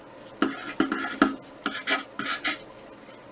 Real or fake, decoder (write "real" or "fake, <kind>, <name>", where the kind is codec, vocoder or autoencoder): real